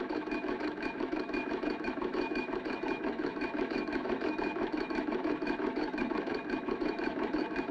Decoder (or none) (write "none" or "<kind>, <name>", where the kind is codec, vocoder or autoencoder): autoencoder, DAC-VAE